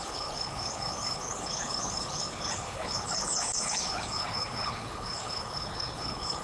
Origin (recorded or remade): remade